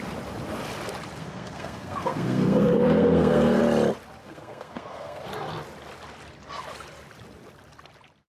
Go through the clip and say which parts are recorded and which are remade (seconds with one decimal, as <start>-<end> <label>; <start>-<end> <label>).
0.0-1.2 recorded; 1.2-3.6 remade; 3.6-4.2 recorded; 4.2-5.2 remade; 5.2-8.3 recorded